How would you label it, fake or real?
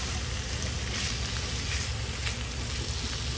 real